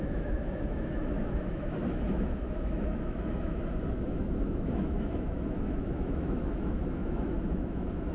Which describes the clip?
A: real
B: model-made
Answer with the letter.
B